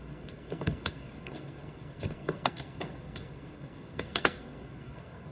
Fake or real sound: fake